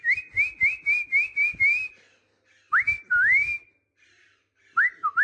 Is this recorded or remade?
recorded